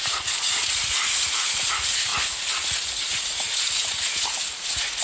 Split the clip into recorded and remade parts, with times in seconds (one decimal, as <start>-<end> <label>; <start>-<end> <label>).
0.0-5.0 remade